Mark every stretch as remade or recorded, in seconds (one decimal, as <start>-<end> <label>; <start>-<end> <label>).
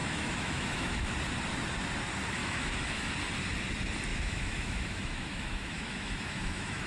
0.0-1.1 remade; 1.1-2.4 recorded; 2.4-3.1 remade; 3.1-4.1 recorded; 4.1-6.9 remade